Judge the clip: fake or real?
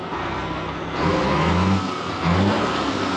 fake